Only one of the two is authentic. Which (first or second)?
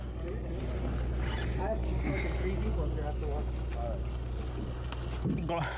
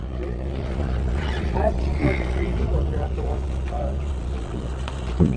first